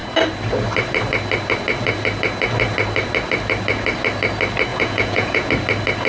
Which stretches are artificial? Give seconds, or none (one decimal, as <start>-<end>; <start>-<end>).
4.7-5.5